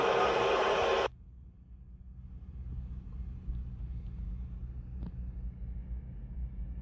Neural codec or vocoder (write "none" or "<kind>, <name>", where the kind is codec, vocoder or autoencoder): none